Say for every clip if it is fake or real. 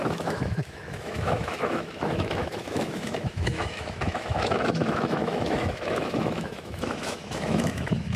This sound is fake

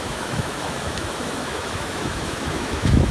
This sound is fake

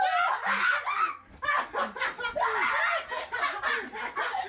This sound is real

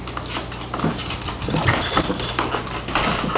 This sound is real